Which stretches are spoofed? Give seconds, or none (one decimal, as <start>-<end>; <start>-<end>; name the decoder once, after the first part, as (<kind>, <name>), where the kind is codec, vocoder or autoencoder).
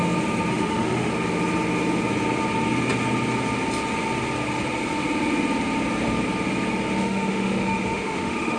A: 0.5-1.1 (autoencoder, DAC-VAE); 7.0-8.6